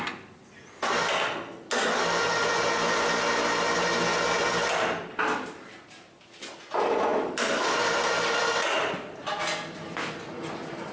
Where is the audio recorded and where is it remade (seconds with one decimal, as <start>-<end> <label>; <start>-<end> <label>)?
0.0-10.9 recorded